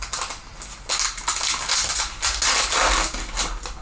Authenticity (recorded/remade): recorded